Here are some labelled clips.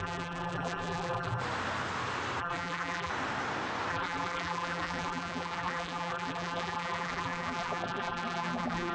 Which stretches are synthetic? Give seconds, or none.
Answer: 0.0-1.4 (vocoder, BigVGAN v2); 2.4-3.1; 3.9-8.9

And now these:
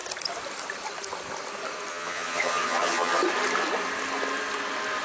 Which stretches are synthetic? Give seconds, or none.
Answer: 1.9-3.2 (vocoder, HiFi-GAN)

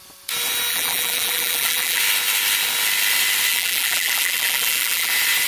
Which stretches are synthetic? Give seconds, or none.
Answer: 0.7-2.0 (vocoder, BigVGAN v2); 3.5-5.1

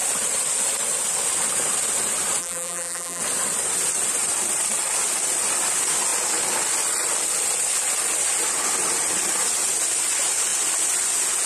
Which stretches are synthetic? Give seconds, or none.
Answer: 2.4-3.2 (vocoder, BigVGAN v2)

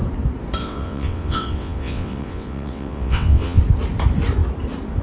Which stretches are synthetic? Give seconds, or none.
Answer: 0.6-3.6 (vocoder, WaveNeXt)